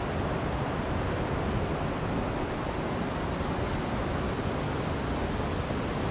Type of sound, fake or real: real